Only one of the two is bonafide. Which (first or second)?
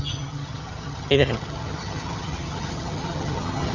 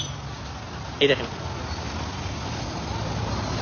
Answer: second